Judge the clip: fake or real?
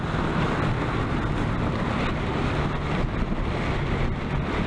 real